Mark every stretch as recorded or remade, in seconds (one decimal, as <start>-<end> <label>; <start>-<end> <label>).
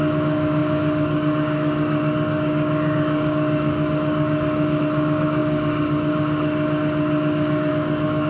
0.0-8.3 remade